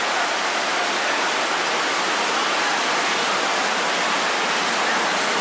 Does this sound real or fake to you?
real